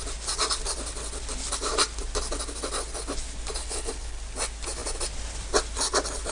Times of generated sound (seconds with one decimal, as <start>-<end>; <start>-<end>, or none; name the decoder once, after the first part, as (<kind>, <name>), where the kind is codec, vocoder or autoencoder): 3.6-4.2 (codec, HILCodec)